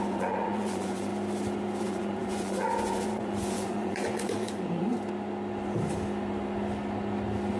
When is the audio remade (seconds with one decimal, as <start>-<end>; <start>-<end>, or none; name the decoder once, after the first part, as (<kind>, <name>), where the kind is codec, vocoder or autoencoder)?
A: 0.0-1.1 (vocoder, Vocos); 1.8-4.9